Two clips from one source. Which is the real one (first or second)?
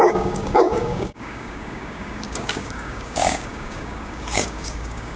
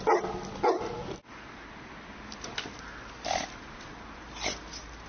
second